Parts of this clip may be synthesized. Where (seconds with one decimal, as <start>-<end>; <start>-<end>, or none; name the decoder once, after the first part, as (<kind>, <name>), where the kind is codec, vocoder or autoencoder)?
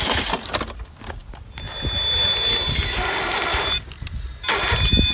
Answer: none